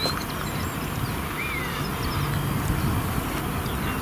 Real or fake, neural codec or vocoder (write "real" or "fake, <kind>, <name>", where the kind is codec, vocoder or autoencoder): real